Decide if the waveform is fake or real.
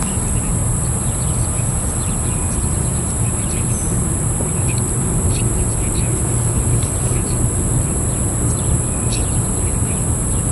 fake